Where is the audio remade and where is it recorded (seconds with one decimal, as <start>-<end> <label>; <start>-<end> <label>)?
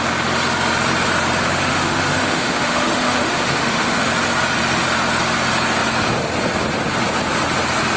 0.0-1.7 recorded; 1.7-4.1 remade; 4.1-8.0 recorded